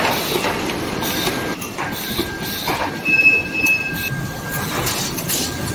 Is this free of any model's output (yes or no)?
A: yes